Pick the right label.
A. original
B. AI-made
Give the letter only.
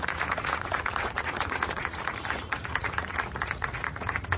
B